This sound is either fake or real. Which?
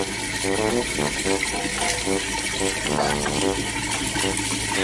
real